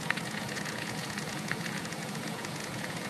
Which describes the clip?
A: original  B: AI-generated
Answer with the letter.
B